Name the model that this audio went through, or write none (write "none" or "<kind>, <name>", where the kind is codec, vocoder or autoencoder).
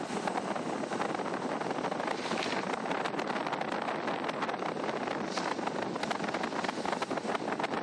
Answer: none